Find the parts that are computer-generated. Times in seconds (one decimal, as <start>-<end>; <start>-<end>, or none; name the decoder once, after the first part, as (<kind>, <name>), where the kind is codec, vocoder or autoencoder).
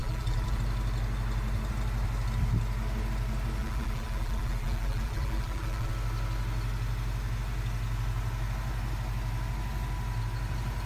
0.0-0.6 (vocoder, BigVGAN v2); 3.6-5.9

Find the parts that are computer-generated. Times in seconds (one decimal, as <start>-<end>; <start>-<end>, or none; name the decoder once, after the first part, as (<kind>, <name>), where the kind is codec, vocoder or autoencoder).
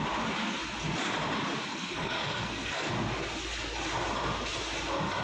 1.7-2.9 (codec, SNAC)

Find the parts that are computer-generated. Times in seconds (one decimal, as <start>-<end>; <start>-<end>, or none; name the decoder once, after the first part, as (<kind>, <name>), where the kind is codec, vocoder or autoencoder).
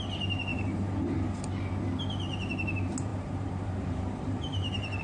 0.5-1.5 (vocoder, BigVGAN v2); 3.1-5.0